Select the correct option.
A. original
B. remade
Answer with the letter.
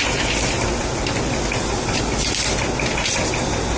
A